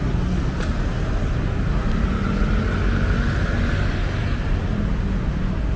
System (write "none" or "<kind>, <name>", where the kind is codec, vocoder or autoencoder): none